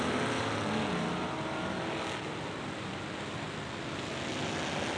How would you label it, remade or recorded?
recorded